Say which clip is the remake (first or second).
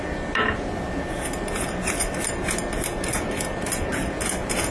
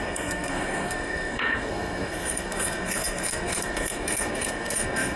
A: second